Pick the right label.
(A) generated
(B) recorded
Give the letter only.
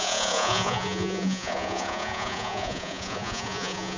A